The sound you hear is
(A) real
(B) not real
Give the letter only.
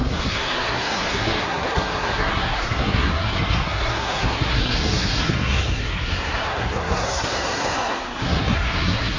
B